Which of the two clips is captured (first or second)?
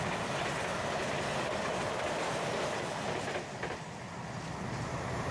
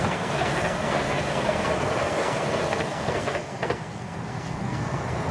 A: first